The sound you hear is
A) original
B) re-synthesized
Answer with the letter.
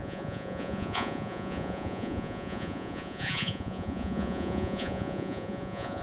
B